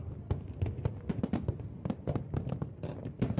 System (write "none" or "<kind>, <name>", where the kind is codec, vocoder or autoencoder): none